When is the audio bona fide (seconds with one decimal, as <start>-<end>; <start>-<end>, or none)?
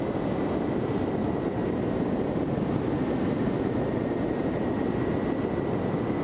0.0-1.6; 4.8-6.2